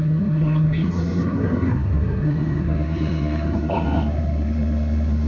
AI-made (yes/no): yes